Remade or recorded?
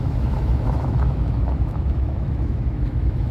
remade